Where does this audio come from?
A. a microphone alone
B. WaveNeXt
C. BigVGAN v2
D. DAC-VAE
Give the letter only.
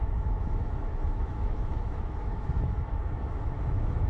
D